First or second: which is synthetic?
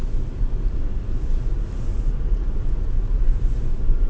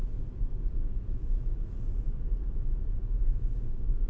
second